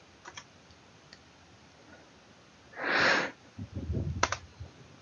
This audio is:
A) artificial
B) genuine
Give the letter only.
B